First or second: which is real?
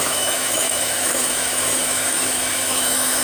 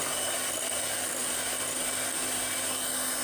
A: second